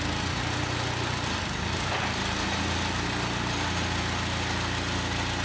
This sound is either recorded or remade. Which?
recorded